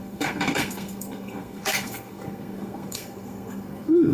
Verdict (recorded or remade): remade